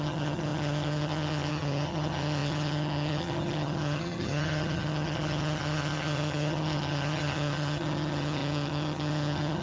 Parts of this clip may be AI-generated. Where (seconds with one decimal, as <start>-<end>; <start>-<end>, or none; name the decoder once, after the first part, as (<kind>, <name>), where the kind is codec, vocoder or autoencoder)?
0.0-9.6 (vocoder, HiFi-GAN)